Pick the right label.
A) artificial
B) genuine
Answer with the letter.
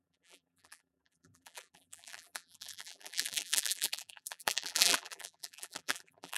A